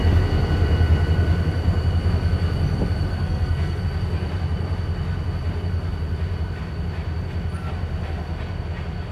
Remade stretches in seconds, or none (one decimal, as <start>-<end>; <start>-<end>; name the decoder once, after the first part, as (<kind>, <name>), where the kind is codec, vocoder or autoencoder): 3.1-3.8 (codec, SNAC)